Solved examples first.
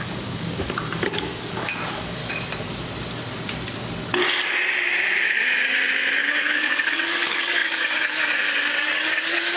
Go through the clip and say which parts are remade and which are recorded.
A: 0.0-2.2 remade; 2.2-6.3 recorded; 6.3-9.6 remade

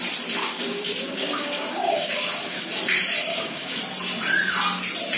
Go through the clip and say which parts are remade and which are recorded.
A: 0.0-0.4 recorded; 0.4-2.7 remade; 2.7-3.3 recorded; 3.3-3.8 remade; 3.8-5.2 recorded

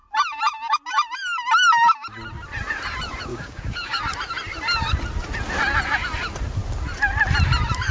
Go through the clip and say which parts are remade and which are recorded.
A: 0.0-3.3 recorded; 3.3-4.0 remade; 4.0-7.9 recorded